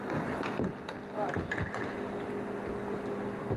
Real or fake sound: real